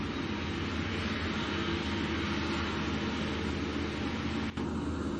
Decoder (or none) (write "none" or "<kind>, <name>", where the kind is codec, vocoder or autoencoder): none